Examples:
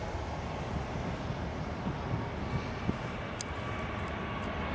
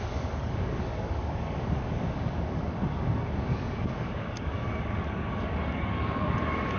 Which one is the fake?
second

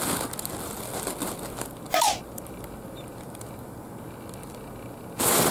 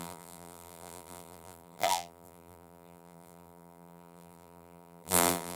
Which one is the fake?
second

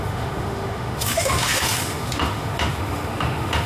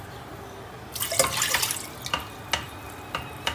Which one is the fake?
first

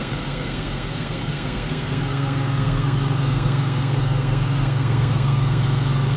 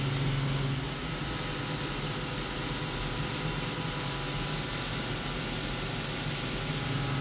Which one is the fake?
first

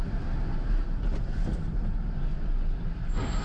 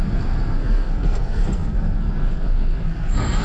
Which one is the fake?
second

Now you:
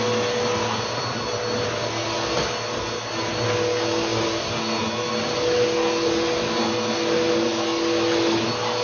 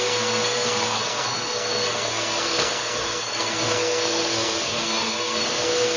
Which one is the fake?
second